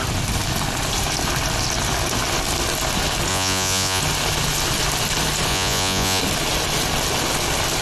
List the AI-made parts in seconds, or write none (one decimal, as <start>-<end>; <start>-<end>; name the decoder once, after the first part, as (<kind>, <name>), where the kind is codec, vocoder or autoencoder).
3.3-4.0 (vocoder, Vocos); 5.5-6.2